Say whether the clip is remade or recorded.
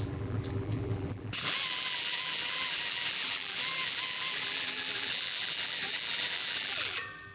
remade